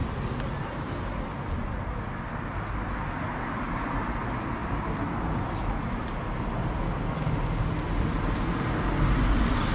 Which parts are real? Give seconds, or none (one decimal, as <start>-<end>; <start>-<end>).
1.4-4.6; 5.5-9.7